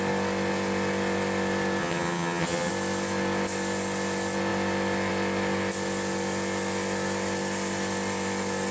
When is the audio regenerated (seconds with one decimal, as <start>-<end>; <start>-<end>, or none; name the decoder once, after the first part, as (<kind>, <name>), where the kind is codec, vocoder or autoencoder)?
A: 1.8-2.7 (vocoder, HiFi-GAN)